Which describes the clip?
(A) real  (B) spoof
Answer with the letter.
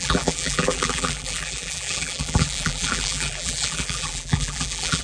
B